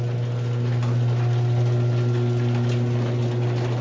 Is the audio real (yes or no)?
yes